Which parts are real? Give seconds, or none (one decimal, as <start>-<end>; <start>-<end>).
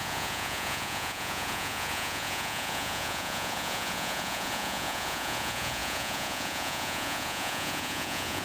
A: none